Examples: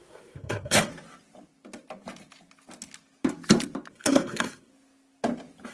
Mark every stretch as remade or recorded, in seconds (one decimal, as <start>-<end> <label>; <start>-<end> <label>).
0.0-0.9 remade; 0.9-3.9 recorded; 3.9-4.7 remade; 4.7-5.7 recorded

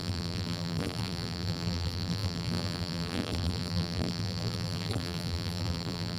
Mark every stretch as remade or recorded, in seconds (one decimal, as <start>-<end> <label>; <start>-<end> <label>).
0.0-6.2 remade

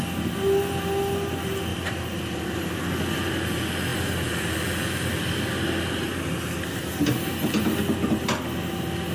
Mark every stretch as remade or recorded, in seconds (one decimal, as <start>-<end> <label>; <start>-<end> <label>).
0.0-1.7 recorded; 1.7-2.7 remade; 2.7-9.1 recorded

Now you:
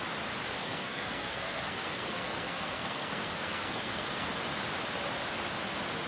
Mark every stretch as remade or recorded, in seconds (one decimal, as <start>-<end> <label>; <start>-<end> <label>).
0.0-0.6 recorded; 0.6-4.3 remade; 4.3-6.1 recorded

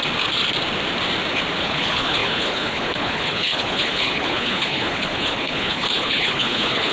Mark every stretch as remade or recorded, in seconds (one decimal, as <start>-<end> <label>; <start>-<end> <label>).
0.0-1.6 recorded; 1.6-6.9 remade